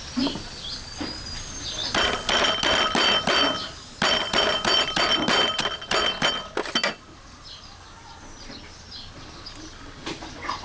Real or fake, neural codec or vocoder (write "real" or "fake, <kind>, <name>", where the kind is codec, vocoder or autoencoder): real